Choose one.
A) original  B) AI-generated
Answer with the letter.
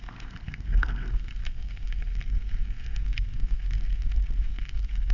B